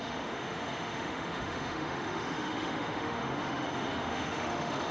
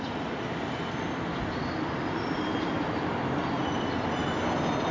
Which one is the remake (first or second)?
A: first